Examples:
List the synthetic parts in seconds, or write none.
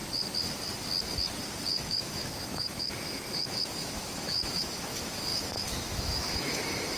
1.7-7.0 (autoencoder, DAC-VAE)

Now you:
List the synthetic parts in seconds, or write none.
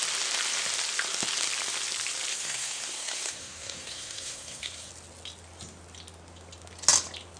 2.3-4.9 (codec, SNAC)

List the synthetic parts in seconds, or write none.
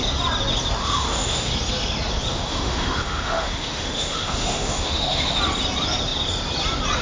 0.8-1.5 (autoencoder, DAC-VAE); 2.3-5.4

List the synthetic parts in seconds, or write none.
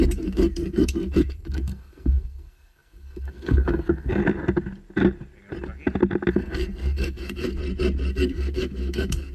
0.0-4.2 (codec, SNAC); 6.3-7.6; 8.1-9.3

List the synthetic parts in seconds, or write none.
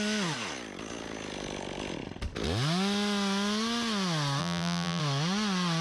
4.4-5.0 (vocoder, BigVGAN v2)